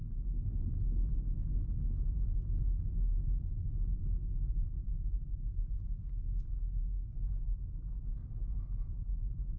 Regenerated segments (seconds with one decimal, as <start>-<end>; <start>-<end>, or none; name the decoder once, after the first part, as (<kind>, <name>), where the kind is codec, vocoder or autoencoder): 4.5-6.0 (vocoder, BigVGAN v2); 8.2-9.6